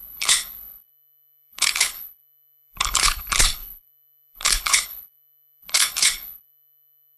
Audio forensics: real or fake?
fake